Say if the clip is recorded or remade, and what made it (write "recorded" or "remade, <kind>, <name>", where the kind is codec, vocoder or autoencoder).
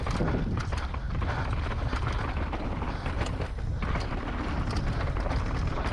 recorded